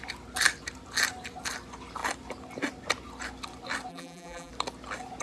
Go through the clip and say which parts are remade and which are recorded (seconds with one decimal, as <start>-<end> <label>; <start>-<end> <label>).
0.0-3.9 recorded; 3.9-4.5 remade; 4.5-5.2 recorded